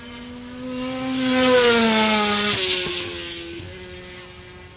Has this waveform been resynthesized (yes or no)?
no